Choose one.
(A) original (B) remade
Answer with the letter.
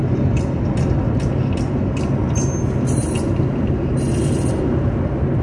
A